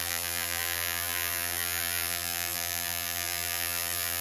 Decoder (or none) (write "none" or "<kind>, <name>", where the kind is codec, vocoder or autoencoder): vocoder, BigVGAN v2